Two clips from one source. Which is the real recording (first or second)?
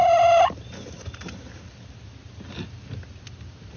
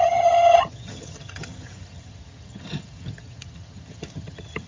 first